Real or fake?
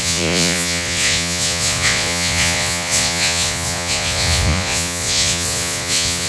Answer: fake